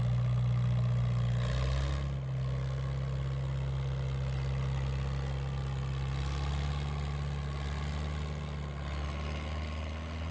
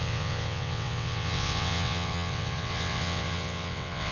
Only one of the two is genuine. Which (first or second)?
first